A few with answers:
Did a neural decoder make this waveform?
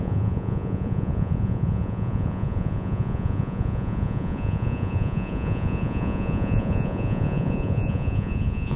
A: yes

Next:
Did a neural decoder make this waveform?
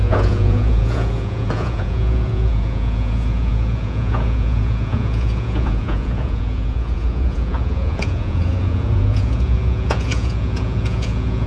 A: yes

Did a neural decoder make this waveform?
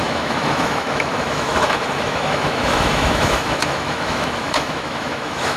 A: yes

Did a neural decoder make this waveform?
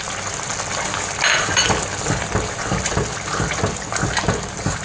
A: no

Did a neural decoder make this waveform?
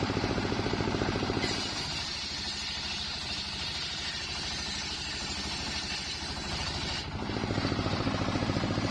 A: yes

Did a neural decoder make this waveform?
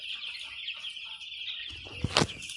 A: no